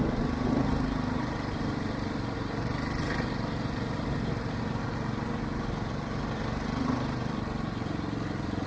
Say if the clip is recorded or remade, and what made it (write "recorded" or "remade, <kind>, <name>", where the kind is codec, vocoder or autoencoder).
recorded